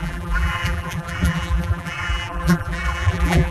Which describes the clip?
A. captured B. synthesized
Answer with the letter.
B